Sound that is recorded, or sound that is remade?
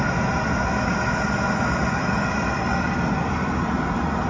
recorded